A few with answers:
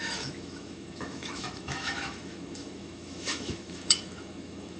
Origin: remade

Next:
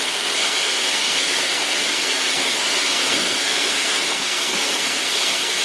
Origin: remade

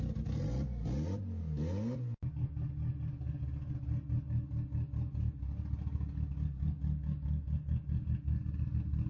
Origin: recorded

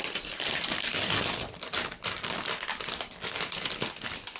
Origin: recorded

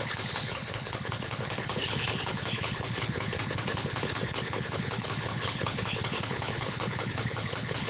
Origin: remade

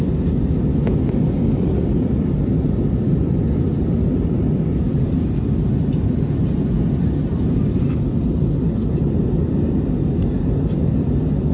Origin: recorded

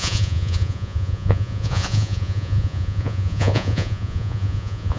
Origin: remade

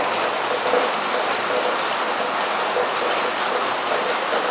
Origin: recorded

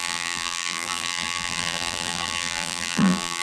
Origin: remade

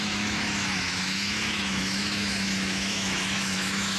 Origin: remade